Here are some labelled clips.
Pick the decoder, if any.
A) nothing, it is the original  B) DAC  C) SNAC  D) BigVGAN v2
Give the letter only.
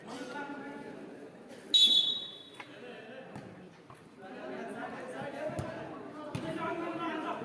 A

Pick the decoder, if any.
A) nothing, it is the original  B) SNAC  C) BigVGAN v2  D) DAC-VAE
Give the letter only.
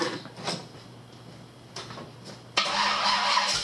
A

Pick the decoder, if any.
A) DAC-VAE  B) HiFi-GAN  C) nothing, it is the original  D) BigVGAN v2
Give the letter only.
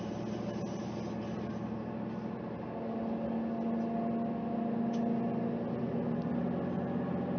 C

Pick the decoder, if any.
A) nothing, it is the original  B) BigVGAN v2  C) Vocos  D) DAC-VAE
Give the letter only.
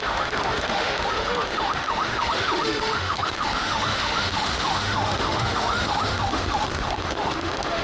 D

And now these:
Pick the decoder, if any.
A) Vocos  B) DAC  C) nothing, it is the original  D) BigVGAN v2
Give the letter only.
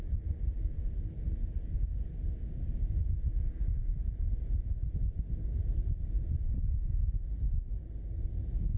C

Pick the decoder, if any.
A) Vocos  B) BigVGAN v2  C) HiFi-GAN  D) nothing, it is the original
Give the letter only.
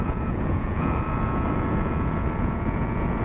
A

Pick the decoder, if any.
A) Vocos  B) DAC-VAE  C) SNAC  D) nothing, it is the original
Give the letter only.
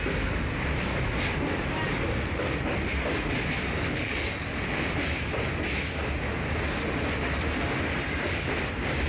D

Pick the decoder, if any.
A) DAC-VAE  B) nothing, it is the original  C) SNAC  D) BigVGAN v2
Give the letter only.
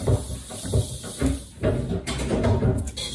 B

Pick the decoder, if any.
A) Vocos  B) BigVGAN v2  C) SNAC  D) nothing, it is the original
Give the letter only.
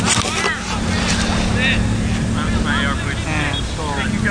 D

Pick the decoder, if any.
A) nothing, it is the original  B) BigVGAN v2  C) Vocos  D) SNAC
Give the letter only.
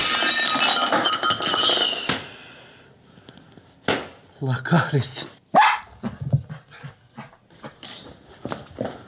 A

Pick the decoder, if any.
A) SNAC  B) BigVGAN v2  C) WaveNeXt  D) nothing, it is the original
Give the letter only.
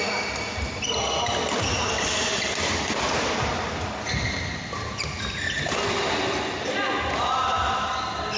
D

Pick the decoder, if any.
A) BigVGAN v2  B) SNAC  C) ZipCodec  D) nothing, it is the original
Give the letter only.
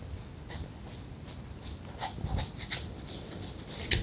D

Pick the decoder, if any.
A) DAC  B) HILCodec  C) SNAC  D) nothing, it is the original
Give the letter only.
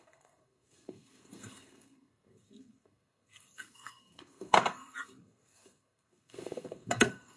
C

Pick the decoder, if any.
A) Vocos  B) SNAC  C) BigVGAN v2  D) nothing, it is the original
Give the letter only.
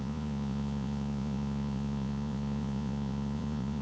A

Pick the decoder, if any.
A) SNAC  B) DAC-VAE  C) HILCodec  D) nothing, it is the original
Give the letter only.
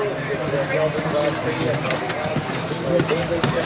D